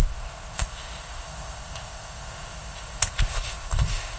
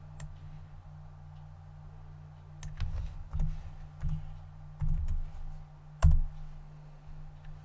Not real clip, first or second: first